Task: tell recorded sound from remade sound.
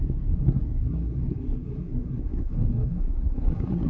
remade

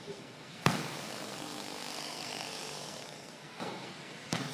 remade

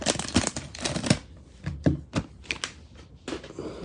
recorded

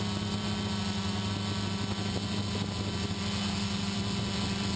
recorded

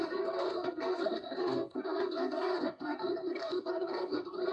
remade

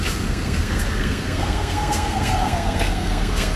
remade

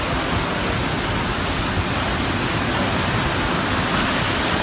recorded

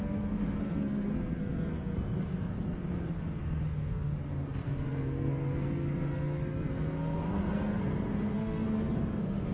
remade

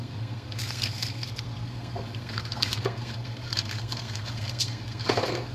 remade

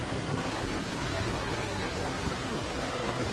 remade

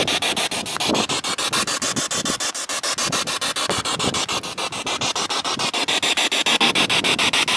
recorded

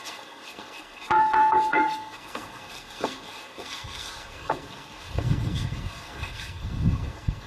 remade